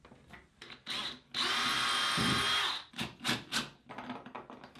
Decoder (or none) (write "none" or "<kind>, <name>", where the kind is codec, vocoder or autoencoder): none